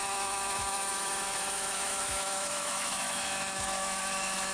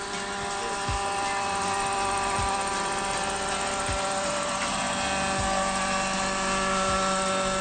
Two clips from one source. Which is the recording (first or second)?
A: second